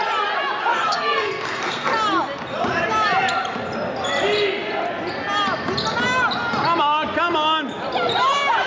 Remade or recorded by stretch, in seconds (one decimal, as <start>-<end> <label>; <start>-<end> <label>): 0.0-0.7 recorded; 0.7-1.9 remade; 1.9-8.7 recorded